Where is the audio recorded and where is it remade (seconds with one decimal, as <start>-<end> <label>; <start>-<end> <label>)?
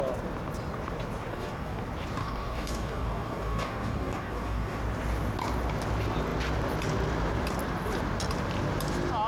0.0-1.3 recorded; 1.3-1.8 remade; 1.8-2.2 recorded; 2.2-4.8 remade; 4.8-9.3 recorded